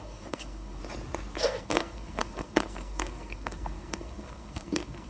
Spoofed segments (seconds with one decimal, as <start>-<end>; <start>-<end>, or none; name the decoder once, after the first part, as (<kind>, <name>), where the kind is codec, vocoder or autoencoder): 0.0-0.8 (codec, SNAC); 1.4-5.1